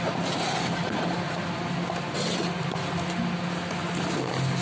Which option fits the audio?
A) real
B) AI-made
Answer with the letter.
A